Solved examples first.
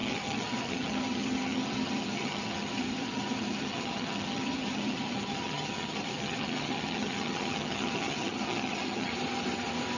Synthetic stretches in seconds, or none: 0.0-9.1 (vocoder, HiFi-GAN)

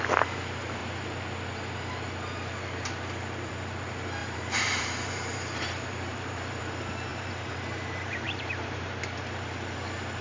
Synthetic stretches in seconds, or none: 4.2-6.6 (vocoder, BigVGAN v2); 7.1-9.0

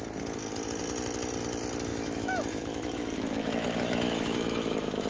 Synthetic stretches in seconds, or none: 1.9-5.1 (autoencoder, DAC-VAE)

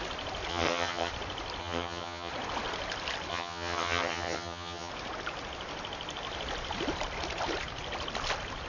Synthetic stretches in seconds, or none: 0.5-1.1 (vocoder, HiFi-GAN); 1.6-2.3; 3.3-4.9

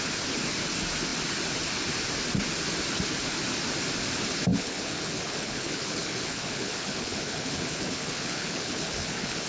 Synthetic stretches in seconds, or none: 4.5-9.5 (codec, HILCodec)

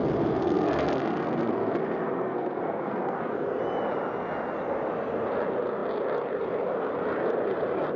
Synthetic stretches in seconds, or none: 0.4-3.6 (codec, SNAC)